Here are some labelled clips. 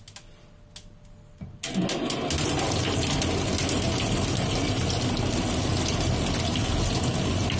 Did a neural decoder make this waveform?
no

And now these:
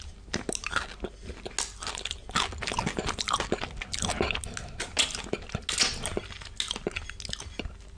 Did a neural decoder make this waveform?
no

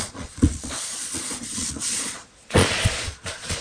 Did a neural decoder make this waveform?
yes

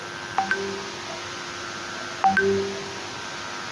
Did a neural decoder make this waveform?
no